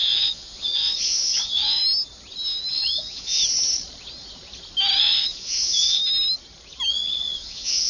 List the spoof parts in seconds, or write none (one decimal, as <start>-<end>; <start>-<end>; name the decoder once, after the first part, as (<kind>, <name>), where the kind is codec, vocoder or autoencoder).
0.0-1.8 (vocoder, Vocos); 2.7-3.4; 5.0-6.0; 6.9-7.9